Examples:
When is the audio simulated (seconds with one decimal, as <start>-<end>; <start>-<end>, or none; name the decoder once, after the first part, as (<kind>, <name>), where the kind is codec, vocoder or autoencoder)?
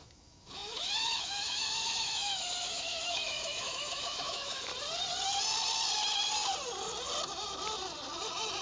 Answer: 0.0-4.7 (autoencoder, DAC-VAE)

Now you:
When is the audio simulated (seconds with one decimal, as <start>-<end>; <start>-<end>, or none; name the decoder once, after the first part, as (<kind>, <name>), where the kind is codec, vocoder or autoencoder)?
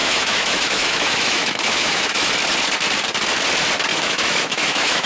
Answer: 0.0-2.3 (autoencoder, DAC-VAE); 3.9-5.1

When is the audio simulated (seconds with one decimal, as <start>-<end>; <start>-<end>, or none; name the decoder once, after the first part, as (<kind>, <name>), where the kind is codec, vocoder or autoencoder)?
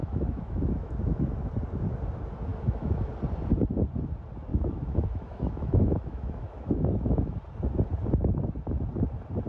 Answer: 0.0-1.5 (autoencoder, DAC-VAE); 2.5-3.1; 4.5-7.4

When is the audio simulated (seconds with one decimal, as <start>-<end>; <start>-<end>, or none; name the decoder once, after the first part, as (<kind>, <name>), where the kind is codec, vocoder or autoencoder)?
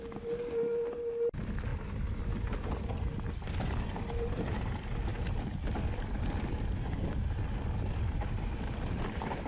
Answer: none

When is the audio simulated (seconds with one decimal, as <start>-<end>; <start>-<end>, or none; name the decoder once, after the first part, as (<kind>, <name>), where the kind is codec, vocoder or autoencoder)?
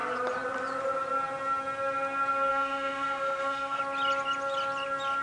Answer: 2.5-3.8 (autoencoder, DAC-VAE)